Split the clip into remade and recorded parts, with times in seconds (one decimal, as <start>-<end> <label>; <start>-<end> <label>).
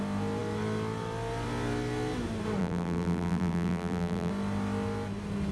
0.0-2.6 recorded; 2.6-4.3 remade; 4.3-5.5 recorded